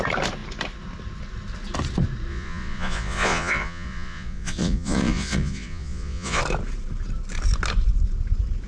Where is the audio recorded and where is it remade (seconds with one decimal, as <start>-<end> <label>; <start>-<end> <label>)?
0.0-2.3 recorded; 2.3-6.4 remade; 6.4-8.7 recorded